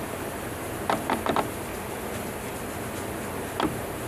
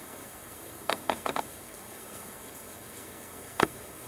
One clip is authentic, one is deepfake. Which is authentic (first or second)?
first